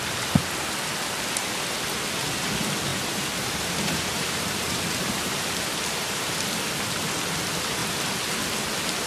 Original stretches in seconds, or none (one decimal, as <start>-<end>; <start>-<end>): 0.0-2.9; 6.2-7.8; 8.3-9.1